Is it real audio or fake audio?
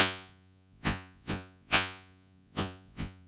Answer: fake